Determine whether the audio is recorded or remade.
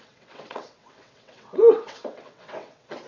remade